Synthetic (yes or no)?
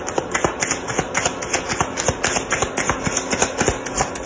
no